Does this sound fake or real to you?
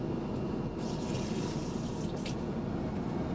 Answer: real